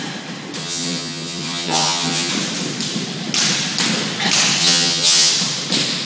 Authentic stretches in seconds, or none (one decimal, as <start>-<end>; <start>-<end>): 0.0-0.6; 2.3-4.6; 5.3-6.0